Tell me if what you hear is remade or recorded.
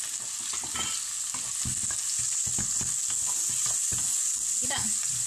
recorded